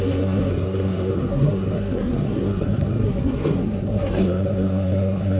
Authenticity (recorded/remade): remade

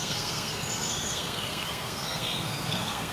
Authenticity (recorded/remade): remade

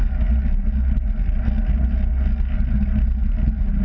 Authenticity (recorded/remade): recorded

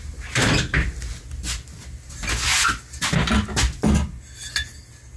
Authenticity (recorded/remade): recorded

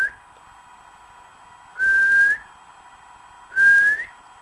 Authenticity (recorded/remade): recorded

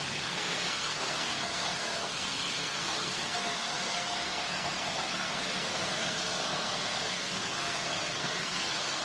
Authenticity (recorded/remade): remade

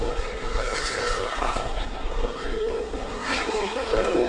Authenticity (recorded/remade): remade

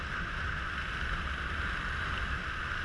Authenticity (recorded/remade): recorded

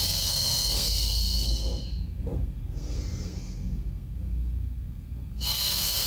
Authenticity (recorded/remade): remade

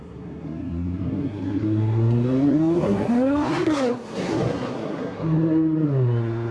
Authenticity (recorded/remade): remade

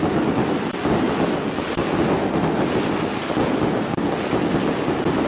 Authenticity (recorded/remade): recorded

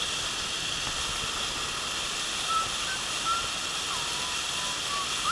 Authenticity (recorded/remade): recorded